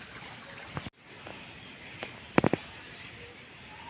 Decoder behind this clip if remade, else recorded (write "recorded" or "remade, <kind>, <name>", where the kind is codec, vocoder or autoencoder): recorded